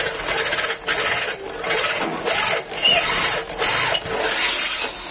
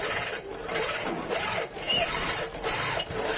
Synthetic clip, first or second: second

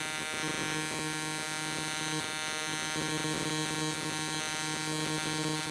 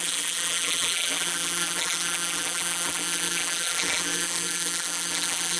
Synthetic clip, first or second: second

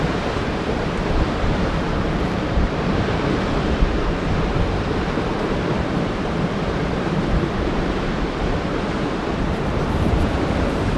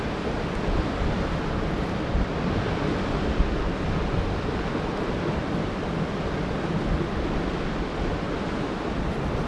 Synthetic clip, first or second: first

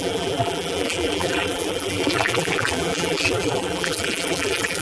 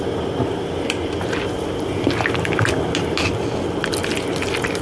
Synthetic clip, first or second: first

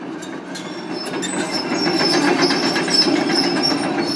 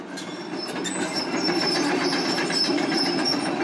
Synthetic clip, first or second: second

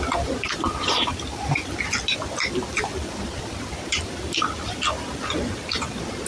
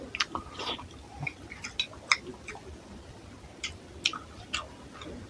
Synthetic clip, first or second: first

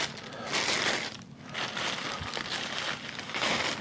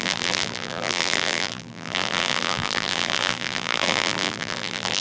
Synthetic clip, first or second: second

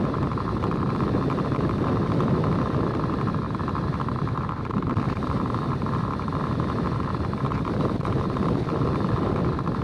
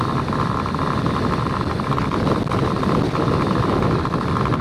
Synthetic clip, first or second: first